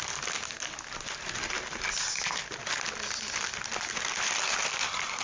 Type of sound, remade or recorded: recorded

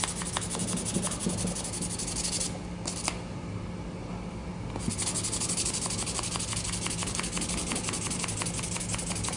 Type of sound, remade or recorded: recorded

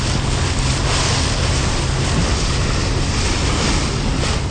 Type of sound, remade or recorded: recorded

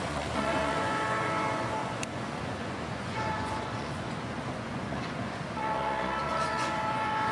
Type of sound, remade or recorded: remade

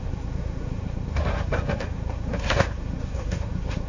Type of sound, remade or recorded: remade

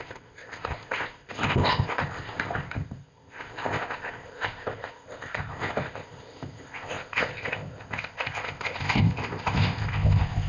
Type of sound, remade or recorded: remade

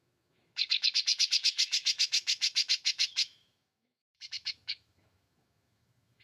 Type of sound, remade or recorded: remade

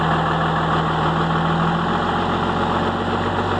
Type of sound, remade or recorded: recorded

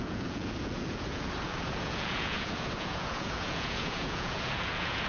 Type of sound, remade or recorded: remade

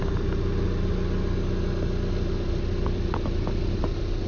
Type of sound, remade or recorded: recorded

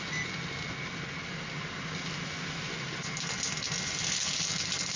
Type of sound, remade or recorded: recorded